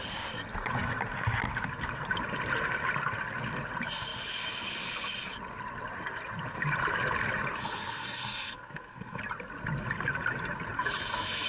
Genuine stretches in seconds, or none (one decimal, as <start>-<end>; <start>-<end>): 0.0-7.6; 9.2-11.5